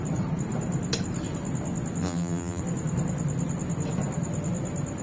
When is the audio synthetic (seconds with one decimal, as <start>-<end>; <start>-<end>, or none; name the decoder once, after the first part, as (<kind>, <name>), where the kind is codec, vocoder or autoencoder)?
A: 2.0-2.6 (vocoder, BigVGAN v2)